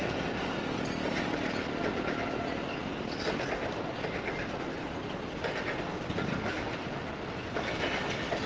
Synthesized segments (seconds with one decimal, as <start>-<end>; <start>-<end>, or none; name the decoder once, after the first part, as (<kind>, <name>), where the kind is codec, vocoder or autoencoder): none